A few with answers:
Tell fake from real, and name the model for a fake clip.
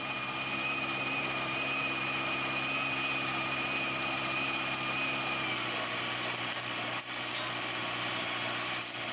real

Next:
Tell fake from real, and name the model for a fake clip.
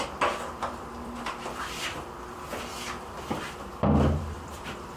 fake, vocoder, BigVGAN v2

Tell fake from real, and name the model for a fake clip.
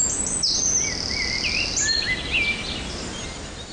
real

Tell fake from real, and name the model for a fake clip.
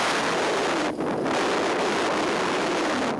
real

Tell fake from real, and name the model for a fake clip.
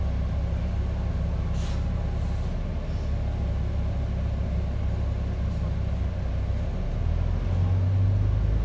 real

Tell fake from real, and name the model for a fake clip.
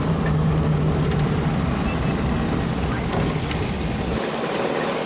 real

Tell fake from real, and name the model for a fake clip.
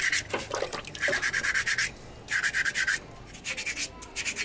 real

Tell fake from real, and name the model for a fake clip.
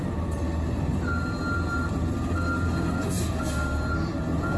real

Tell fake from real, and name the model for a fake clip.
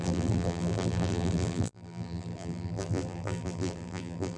fake, vocoder, BigVGAN v2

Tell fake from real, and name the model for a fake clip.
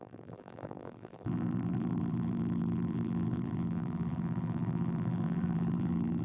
fake, vocoder, BigVGAN v2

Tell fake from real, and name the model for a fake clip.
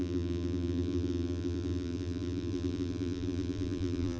fake, vocoder, BigVGAN v2